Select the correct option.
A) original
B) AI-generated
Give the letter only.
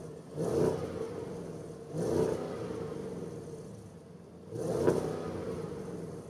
A